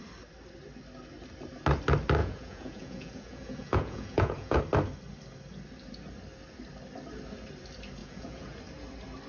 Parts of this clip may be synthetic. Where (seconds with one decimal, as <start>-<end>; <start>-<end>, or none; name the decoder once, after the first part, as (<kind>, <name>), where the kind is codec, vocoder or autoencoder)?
2.2-4.6 (vocoder, Vocos); 8.0-8.6